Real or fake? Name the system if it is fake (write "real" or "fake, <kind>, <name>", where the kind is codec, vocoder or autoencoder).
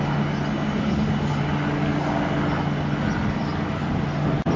real